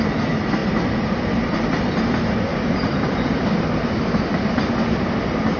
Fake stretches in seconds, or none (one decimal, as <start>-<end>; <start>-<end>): 0.6-2.0; 2.5-3.1